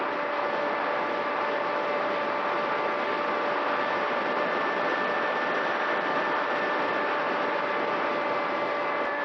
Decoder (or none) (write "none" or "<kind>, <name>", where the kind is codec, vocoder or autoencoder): none